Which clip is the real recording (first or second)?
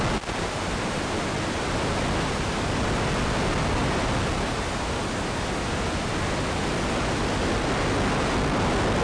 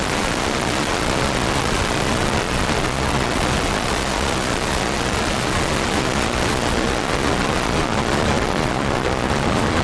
first